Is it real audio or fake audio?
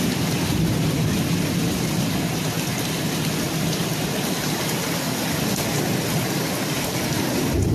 real